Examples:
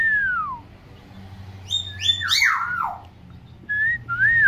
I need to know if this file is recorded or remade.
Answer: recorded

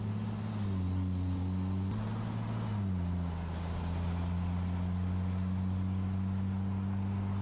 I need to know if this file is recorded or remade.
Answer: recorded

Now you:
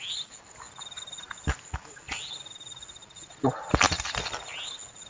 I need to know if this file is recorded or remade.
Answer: recorded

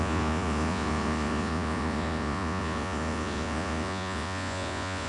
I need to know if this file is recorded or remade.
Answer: remade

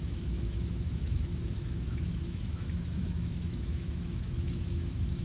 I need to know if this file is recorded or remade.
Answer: remade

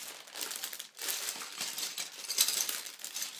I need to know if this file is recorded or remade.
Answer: recorded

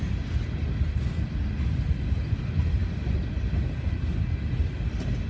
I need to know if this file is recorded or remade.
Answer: recorded